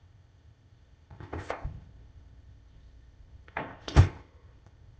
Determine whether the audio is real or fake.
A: fake